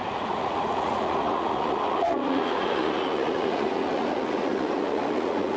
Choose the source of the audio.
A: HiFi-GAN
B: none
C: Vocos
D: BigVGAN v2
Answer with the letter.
C